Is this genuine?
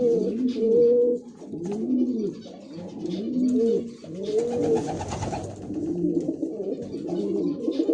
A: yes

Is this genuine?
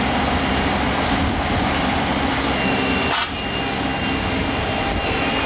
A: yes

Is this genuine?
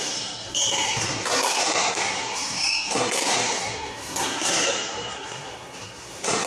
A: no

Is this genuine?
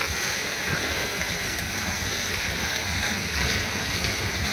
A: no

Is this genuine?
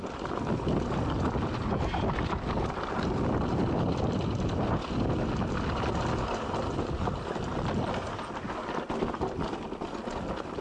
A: yes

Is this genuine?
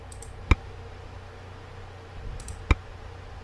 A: yes